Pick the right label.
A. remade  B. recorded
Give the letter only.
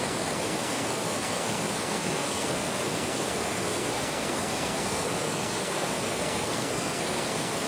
A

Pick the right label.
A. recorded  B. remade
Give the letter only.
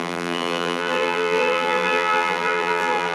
B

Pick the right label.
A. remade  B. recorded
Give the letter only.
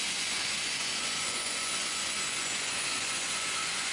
A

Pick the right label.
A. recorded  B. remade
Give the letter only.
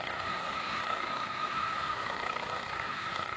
B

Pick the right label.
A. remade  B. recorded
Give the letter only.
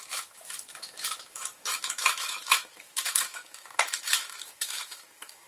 A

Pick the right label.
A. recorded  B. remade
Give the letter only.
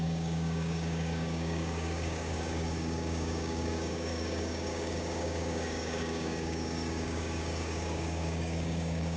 B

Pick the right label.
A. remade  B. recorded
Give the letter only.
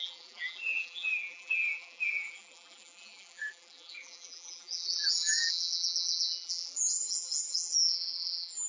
A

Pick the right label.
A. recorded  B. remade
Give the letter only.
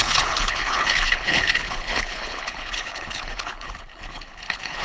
B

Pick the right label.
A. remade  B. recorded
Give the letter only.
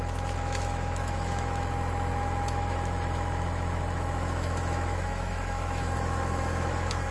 A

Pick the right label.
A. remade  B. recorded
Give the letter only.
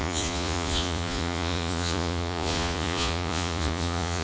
A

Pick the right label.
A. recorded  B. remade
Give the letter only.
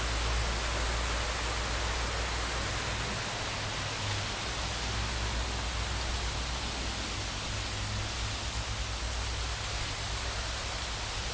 A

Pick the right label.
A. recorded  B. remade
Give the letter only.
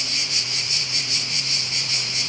B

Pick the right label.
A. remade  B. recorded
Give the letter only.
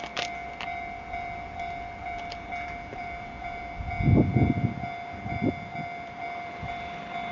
A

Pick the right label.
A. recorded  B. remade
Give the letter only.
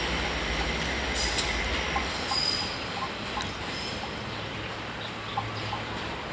A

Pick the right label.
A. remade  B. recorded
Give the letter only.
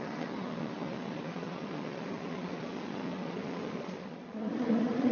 A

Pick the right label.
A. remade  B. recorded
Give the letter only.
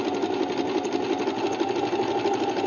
B